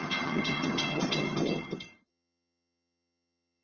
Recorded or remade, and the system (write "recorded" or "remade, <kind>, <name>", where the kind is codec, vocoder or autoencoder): remade, vocoder, HiFi-GAN